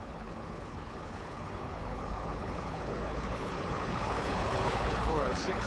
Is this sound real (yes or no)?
no